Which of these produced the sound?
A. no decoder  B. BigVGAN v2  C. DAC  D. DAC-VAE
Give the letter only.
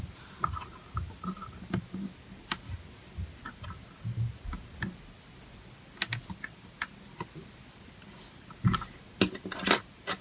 A